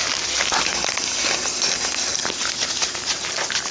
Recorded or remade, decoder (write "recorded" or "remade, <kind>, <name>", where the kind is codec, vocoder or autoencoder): recorded